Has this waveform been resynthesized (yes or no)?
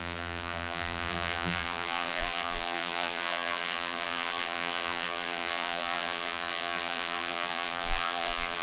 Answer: yes